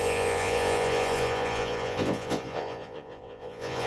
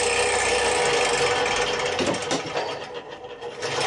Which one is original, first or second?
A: second